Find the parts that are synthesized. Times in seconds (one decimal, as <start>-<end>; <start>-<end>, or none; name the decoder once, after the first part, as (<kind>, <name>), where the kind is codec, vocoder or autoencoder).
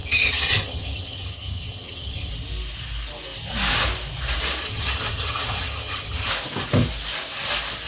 0.0-2.3 (vocoder, HiFi-GAN); 4.6-6.3